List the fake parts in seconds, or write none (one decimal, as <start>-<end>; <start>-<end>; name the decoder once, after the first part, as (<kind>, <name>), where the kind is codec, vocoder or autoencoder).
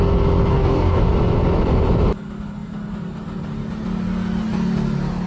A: 0.5-1.0 (codec, DAC)